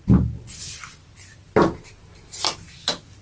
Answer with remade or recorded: recorded